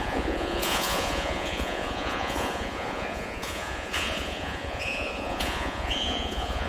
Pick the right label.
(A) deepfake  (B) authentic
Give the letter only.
A